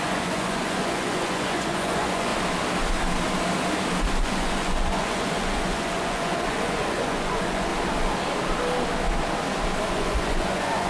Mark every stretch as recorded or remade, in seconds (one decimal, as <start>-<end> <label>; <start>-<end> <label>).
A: 0.0-2.3 remade; 2.3-4.2 recorded; 4.2-7.7 remade; 7.7-9.9 recorded; 9.9-10.9 remade